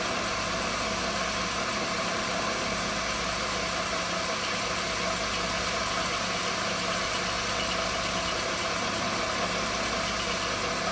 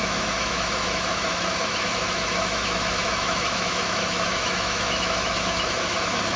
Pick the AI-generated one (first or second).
second